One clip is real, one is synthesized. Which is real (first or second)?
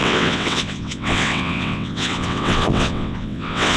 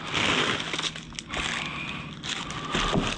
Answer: second